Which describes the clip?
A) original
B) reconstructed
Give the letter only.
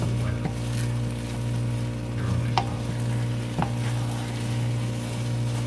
A